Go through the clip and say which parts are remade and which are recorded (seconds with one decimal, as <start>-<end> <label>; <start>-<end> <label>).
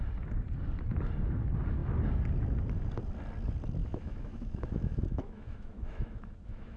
0.0-3.8 recorded; 3.8-6.8 remade